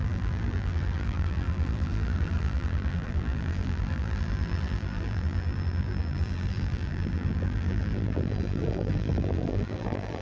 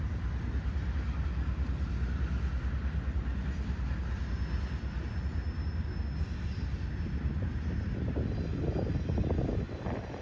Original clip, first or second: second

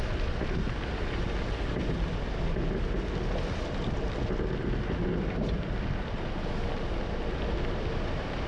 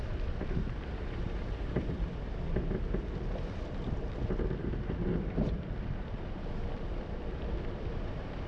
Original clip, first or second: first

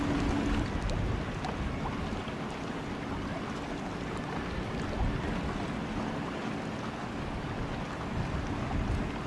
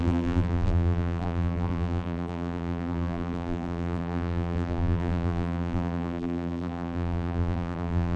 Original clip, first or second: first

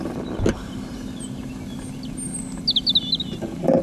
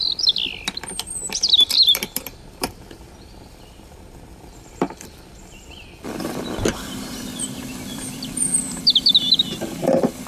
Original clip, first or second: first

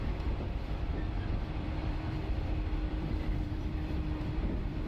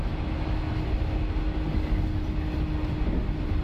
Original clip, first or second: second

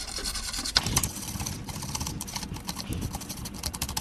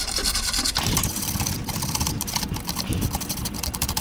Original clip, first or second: first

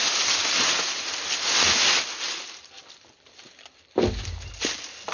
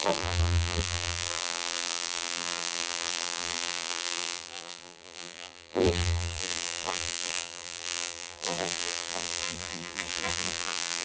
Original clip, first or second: first